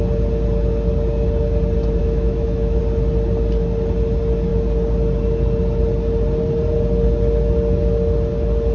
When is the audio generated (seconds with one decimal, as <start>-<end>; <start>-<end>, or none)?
2.0-2.8